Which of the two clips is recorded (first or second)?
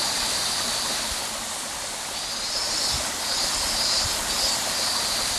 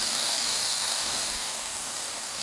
first